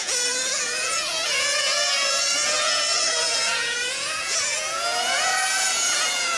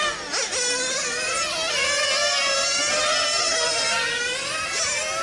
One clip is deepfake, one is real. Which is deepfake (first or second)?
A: first